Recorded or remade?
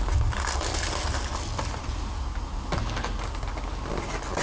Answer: recorded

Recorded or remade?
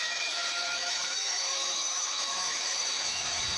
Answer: remade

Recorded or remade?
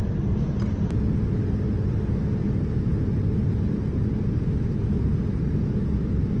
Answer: recorded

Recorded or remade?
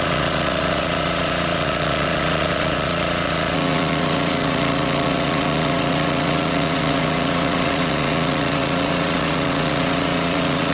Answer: remade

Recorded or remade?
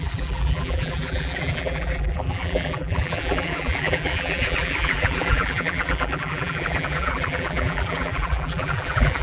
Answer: remade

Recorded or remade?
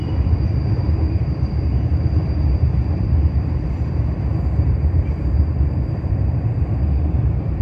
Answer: remade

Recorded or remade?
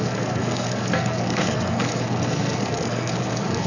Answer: remade